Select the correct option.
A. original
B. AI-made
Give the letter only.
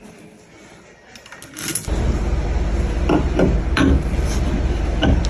A